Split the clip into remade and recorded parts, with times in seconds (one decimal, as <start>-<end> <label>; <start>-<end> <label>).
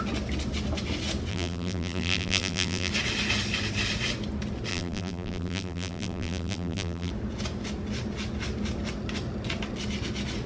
0.0-1.3 recorded; 1.3-2.9 remade; 2.9-4.7 recorded; 4.7-7.1 remade; 7.1-10.5 recorded